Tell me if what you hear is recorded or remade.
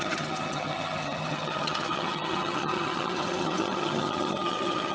remade